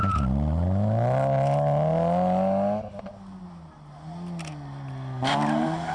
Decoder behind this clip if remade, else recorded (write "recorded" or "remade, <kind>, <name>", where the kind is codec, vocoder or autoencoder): recorded